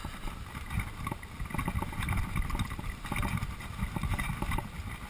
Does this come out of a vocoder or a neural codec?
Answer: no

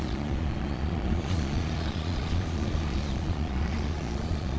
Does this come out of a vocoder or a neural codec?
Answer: yes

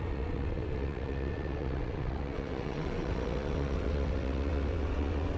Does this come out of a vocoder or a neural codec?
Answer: yes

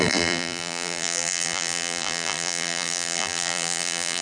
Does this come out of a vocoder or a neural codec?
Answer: yes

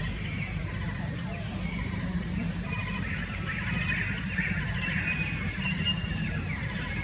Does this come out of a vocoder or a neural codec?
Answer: yes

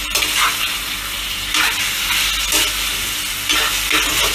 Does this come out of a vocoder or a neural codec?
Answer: no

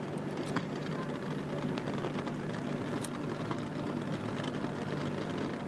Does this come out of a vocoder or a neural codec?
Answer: no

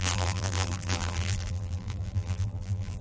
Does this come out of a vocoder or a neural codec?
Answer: yes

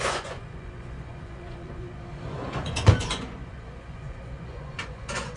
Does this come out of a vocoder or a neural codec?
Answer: yes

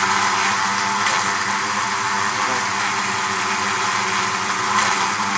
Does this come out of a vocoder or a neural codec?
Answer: no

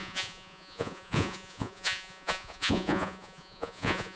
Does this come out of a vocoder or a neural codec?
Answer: yes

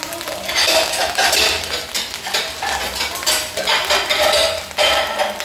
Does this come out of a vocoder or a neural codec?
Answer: no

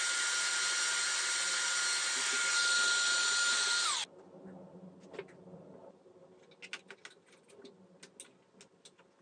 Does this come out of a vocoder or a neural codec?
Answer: no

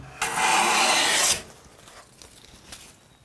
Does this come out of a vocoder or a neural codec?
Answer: no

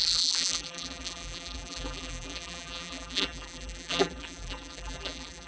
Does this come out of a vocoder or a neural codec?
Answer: yes